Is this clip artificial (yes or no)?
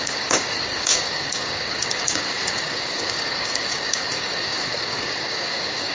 yes